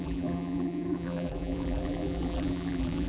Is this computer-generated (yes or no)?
yes